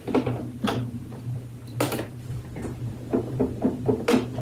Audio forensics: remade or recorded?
remade